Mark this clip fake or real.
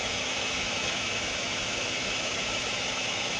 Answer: fake